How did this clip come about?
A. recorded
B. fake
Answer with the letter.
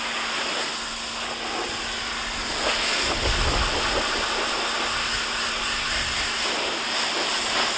A